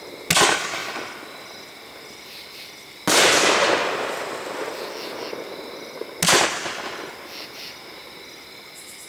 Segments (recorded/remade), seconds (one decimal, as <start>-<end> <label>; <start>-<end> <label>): 0.0-9.1 recorded